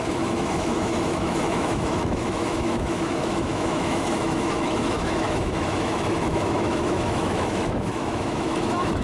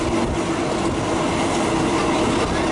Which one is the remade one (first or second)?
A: first